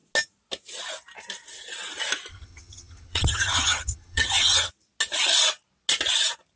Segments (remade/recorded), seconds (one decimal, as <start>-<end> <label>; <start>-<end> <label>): 0.0-2.3 recorded; 2.3-4.7 remade; 4.7-6.6 recorded